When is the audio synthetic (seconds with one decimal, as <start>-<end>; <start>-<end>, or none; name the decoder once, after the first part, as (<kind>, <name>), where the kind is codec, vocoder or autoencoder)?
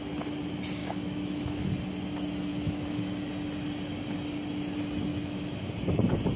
0.8-1.7 (autoencoder, DAC-VAE); 2.5-3.0; 5.1-5.7